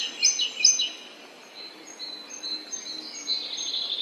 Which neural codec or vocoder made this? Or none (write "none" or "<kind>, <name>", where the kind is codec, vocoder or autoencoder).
none